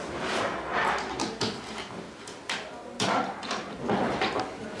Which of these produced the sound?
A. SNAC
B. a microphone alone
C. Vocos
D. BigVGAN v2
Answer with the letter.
B